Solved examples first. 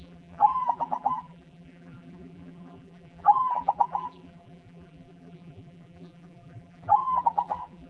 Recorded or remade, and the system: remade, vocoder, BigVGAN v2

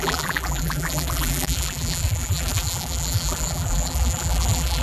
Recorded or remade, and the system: remade, vocoder, BigVGAN v2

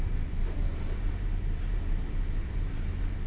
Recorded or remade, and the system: remade, vocoder, BigVGAN v2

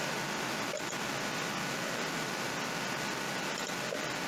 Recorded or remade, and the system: recorded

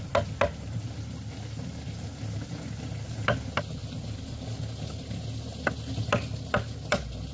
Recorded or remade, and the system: recorded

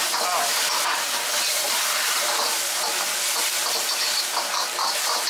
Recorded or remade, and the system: remade, vocoder, BigVGAN v2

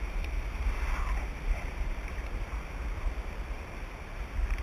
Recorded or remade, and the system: remade, vocoder, BigVGAN v2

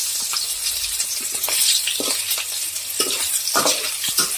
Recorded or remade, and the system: remade, vocoder, BigVGAN v2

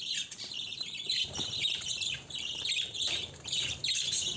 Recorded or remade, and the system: remade, vocoder, BigVGAN v2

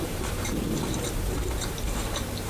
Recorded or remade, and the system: remade, vocoder, BigVGAN v2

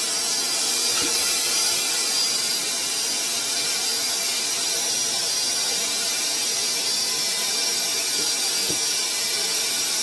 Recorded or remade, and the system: recorded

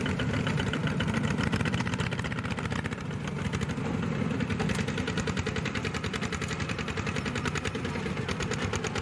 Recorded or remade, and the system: remade, vocoder, BigVGAN v2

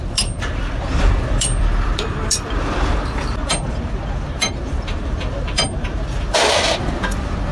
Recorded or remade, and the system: remade, vocoder, BigVGAN v2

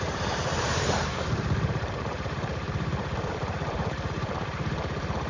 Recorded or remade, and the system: remade, vocoder, BigVGAN v2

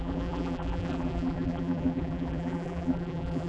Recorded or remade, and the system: remade, vocoder, BigVGAN v2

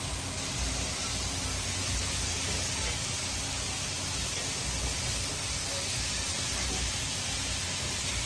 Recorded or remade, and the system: recorded